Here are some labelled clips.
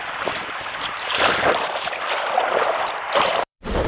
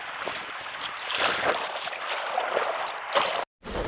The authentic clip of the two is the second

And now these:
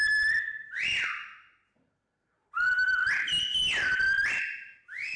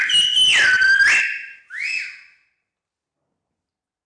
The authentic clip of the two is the second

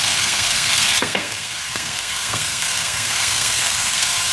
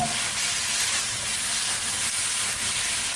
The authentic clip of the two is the second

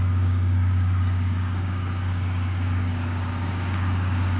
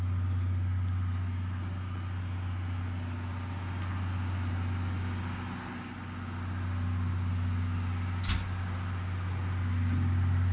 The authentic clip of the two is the second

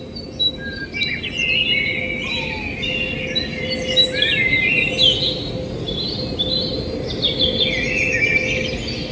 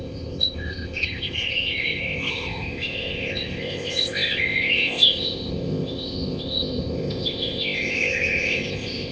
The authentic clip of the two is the first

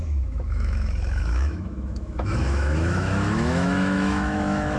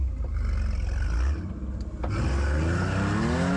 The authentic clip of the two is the second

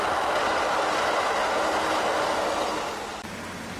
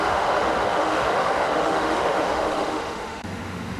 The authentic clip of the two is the first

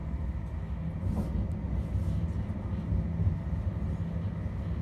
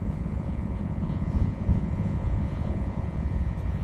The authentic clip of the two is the first